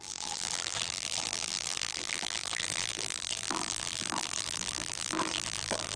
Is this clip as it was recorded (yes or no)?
no